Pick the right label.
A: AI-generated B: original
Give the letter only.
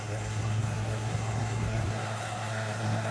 A